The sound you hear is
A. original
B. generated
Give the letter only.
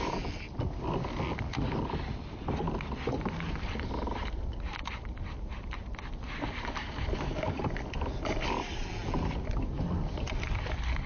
A